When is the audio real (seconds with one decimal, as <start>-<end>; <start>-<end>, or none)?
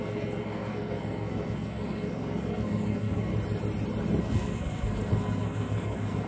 3.3-4.2